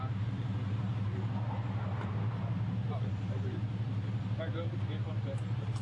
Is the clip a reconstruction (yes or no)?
yes